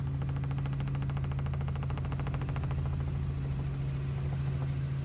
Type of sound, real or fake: real